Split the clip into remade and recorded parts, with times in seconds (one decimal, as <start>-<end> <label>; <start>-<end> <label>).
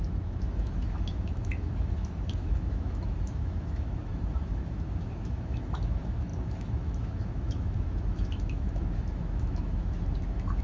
0.0-10.6 remade